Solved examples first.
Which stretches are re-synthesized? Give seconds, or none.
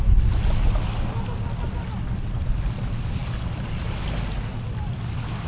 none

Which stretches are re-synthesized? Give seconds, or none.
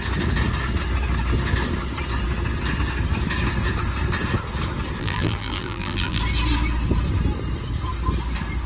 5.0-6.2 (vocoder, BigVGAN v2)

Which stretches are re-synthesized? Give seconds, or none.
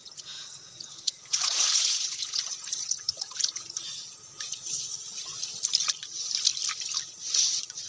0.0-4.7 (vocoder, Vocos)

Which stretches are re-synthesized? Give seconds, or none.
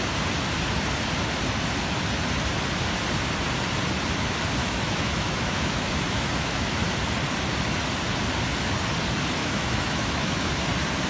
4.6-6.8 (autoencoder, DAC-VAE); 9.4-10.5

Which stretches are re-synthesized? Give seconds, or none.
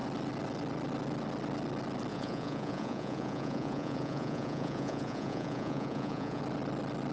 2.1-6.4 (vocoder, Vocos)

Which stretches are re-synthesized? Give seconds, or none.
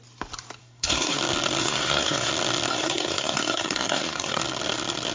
0.6-1.2 (codec, SNAC); 1.6-2.3; 2.7-4.4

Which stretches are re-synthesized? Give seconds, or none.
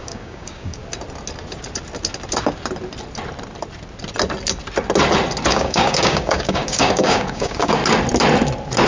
0.0-0.8 (codec, DAC); 5.5-7.8